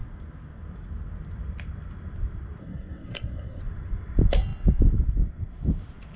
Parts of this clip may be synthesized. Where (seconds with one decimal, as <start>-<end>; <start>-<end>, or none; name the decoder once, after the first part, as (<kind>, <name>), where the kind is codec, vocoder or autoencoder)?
2.6-3.6 (codec, SNAC)